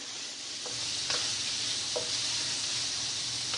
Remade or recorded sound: recorded